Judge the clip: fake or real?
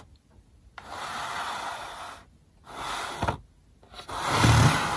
real